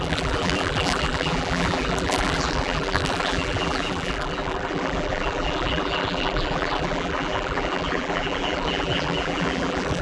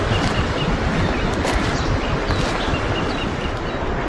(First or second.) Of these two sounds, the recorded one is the second